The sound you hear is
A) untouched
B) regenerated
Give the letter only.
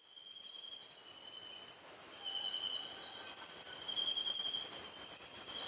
A